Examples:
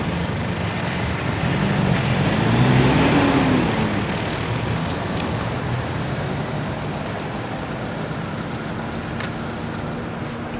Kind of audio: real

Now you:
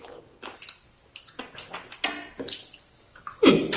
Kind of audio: real